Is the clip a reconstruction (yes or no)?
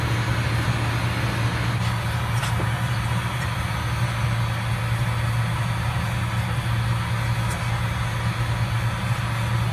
no